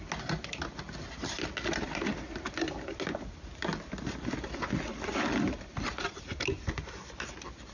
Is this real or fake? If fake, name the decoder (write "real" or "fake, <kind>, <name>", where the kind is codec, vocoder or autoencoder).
real